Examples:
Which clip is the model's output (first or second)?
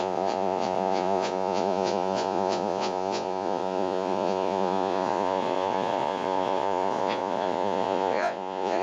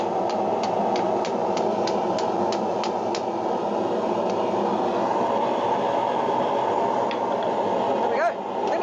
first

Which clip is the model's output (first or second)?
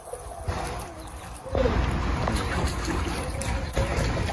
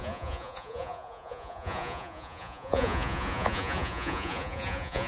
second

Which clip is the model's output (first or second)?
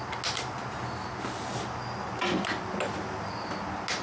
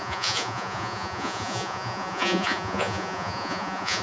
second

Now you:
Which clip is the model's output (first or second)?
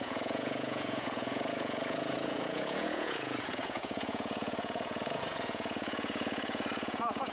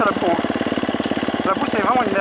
first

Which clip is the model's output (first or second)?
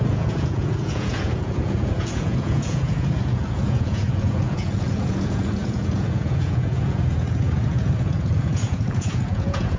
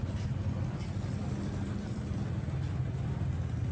first